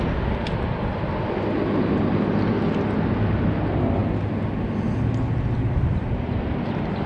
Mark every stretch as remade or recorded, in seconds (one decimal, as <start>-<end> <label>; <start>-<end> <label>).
0.0-7.1 recorded